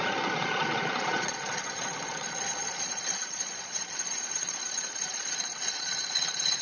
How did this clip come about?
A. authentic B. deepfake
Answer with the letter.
B